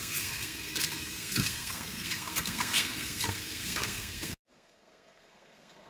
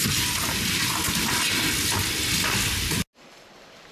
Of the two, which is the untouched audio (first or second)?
second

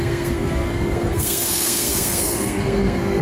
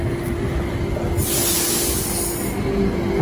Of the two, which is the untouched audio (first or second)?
second